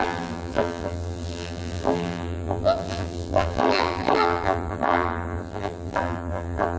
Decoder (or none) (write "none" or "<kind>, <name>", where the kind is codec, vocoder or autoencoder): vocoder, BigVGAN v2